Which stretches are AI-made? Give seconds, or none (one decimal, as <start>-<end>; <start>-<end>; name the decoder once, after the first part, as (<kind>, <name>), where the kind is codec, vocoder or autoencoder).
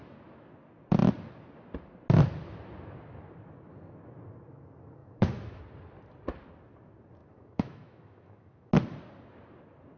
5.0-5.6 (autoencoder, DAC-VAE); 7.2-8.7